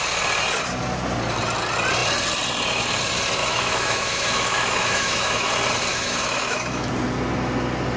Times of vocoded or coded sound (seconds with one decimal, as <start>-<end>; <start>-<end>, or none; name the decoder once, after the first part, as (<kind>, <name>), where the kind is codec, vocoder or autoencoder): 3.4-5.5 (autoencoder, DAC-VAE); 5.9-6.9